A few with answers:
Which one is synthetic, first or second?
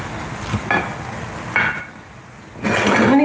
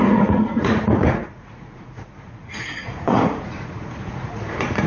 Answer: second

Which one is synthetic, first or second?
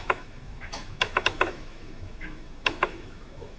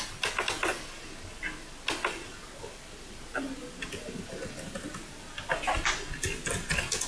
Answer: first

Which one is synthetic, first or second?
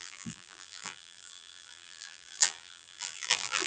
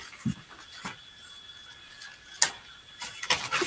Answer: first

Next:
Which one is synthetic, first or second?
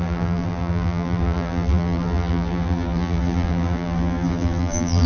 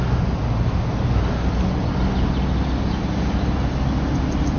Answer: first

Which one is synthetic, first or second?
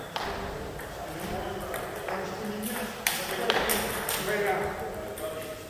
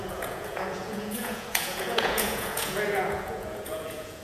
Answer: second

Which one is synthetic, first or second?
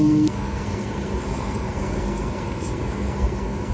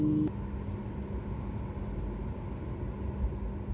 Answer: first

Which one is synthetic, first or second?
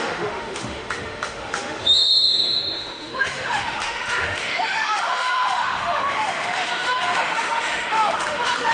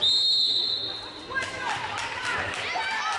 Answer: first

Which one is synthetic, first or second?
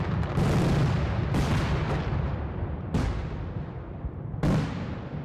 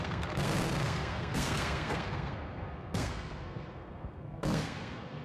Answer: second